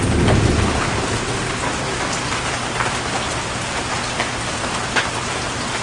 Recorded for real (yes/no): yes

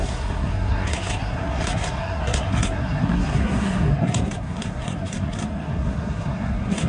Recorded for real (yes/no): no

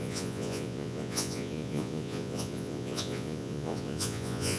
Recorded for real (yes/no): no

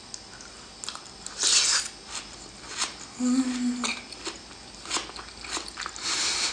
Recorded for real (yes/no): yes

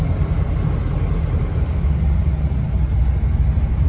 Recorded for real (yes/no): yes